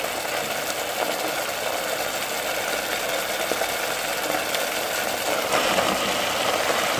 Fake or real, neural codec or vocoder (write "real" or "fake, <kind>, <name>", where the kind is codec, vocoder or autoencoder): real